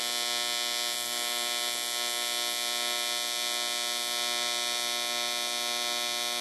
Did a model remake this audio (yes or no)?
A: no